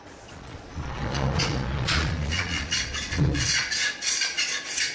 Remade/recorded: remade